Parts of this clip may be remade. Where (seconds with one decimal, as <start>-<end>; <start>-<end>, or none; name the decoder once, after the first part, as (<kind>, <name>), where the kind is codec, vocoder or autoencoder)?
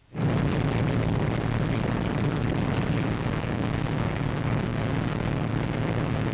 3.1-6.3 (codec, DAC)